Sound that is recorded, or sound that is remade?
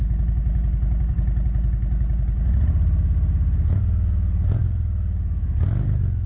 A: recorded